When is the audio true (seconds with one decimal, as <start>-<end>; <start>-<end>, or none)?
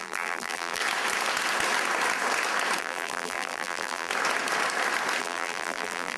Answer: 0.8-2.8; 4.1-5.2